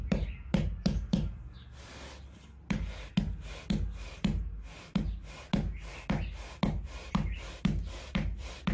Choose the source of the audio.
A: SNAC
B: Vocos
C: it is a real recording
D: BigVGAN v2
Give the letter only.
C